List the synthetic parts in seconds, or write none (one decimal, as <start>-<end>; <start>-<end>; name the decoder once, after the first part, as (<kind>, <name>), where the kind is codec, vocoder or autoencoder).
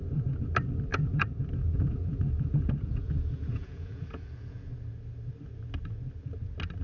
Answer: 0.9-4.7 (vocoder, Vocos)